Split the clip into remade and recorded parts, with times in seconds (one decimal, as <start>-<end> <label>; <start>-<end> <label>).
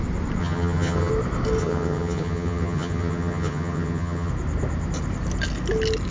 0.0-0.4 recorded; 0.4-1.1 remade; 1.1-1.6 recorded; 1.6-4.3 remade; 4.3-6.1 recorded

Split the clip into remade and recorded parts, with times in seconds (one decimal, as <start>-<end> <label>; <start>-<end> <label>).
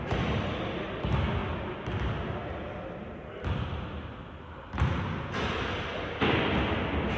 0.0-7.2 recorded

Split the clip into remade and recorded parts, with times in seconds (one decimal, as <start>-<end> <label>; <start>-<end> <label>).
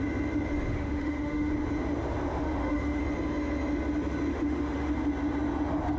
0.0-0.7 recorded; 0.7-1.5 remade; 1.5-2.4 recorded; 2.4-3.0 remade; 3.0-4.3 recorded; 4.3-4.9 remade; 4.9-6.0 recorded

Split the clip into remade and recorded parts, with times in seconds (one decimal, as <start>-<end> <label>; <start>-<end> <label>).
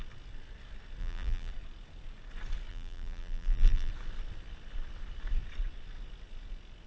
0.0-1.0 recorded; 1.0-1.5 remade; 1.5-2.7 recorded; 2.7-3.9 remade; 3.9-6.9 recorded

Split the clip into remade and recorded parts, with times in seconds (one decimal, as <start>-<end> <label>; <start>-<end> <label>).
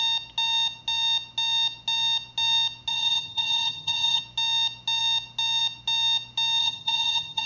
0.0-2.9 recorded; 2.9-4.2 remade; 4.2-6.6 recorded; 6.6-7.5 remade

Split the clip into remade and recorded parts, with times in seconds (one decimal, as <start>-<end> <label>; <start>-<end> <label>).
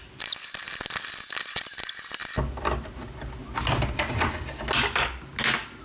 0.0-5.8 recorded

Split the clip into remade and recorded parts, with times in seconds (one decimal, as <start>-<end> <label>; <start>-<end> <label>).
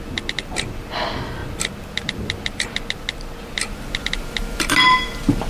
0.0-5.5 recorded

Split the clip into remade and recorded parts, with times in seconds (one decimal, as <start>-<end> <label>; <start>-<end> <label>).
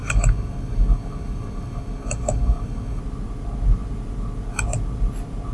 0.0-3.0 remade; 3.0-5.5 recorded